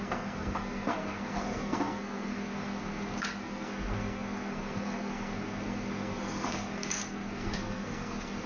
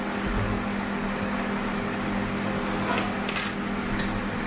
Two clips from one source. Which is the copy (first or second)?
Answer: first